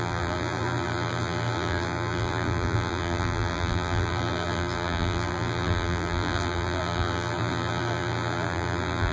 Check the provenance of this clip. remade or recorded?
remade